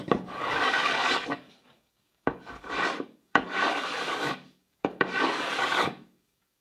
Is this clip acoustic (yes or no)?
no